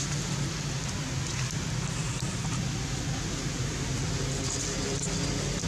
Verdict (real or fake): real